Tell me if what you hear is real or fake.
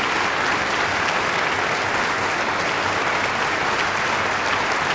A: real